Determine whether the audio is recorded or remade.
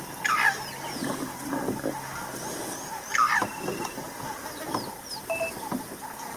recorded